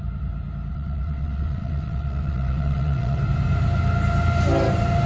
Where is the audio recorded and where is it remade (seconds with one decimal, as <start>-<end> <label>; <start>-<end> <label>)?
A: 0.0-0.7 recorded; 0.7-3.2 remade; 3.2-5.1 recorded